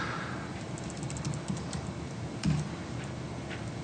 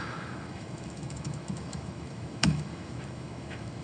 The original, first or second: first